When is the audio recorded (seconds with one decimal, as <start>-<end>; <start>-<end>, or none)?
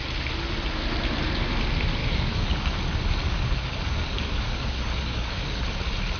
0.0-2.0; 2.8-3.2; 5.6-6.2